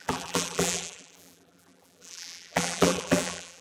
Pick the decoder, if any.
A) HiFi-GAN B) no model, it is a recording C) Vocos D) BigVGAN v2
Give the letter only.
D